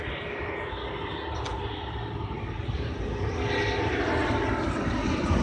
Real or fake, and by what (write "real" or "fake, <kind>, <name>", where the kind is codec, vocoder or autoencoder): real